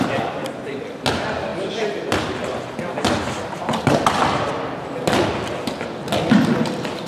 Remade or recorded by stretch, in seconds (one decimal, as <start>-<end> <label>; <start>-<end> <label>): 0.0-7.1 recorded